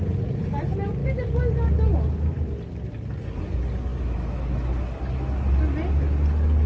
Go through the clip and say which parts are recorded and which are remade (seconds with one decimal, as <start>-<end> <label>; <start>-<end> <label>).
0.0-3.9 recorded; 3.9-4.7 remade; 4.7-6.7 recorded